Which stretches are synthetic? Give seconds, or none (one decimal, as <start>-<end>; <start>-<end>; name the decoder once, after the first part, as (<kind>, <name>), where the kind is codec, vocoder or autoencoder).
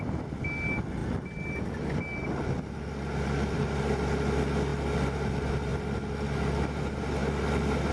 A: none